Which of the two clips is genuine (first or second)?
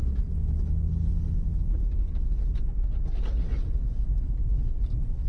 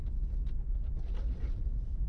first